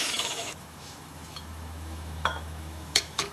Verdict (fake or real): fake